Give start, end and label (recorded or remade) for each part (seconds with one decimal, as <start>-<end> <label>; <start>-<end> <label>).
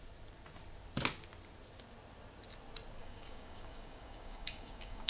0.0-3.0 recorded; 3.0-5.1 remade